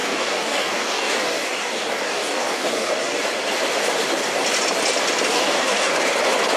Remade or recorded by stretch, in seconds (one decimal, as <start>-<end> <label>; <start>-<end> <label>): 0.0-3.2 remade; 3.2-5.3 recorded; 5.3-5.9 remade; 5.9-6.6 recorded